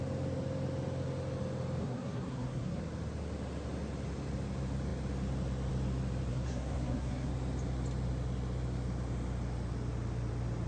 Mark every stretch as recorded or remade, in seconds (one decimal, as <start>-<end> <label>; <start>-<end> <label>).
0.0-1.8 recorded; 1.8-2.8 remade; 2.8-6.3 recorded; 6.3-7.3 remade; 7.3-10.7 recorded